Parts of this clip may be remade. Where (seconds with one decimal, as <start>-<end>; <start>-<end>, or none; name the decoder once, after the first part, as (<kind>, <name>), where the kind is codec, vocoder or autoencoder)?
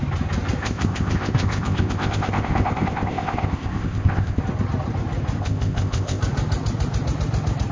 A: 0.6-4.4 (codec, ZipCodec); 5.4-6.2